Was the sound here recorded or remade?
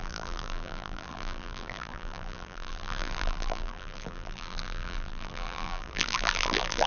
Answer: remade